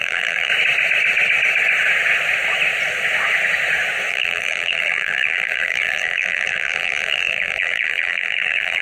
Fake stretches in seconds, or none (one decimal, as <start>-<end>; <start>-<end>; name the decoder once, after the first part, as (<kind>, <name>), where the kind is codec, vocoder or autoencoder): 0.0-0.5 (vocoder, BigVGAN v2); 4.1-8.8